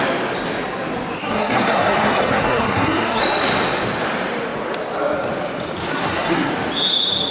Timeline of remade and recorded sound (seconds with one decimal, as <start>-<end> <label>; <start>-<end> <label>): 0.0-1.2 recorded; 1.2-3.2 remade; 3.2-5.9 recorded; 5.9-6.5 remade; 6.5-7.3 recorded